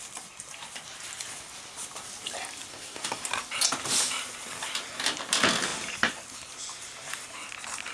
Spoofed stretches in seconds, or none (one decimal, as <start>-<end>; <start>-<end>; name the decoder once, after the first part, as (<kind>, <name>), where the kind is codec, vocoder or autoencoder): 2.7-3.2 (codec, SNAC)